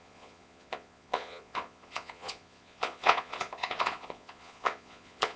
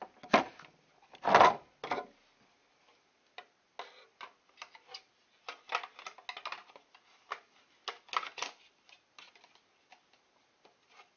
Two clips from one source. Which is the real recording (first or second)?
second